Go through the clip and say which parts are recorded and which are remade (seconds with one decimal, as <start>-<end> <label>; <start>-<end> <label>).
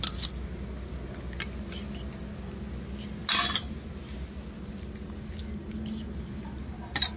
0.0-7.2 recorded